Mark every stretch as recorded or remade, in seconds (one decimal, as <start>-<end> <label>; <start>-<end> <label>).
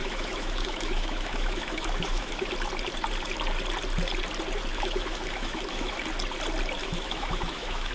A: 0.0-2.5 remade; 2.5-4.7 recorded; 4.7-5.9 remade; 5.9-6.8 recorded; 6.8-7.9 remade